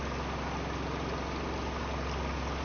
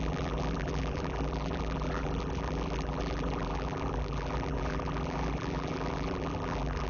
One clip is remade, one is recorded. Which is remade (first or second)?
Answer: second